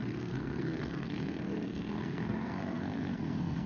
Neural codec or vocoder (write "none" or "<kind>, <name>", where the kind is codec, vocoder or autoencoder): codec, SNAC